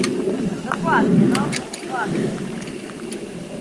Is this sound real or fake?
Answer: real